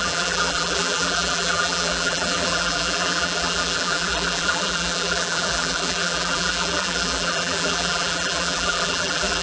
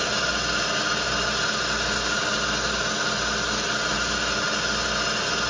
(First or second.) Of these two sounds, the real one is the second